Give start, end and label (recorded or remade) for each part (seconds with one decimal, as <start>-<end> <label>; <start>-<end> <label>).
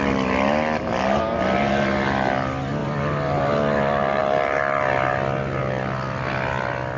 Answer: 0.0-7.0 recorded